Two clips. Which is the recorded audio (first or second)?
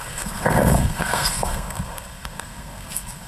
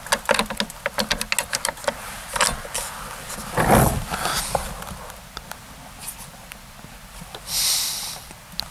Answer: second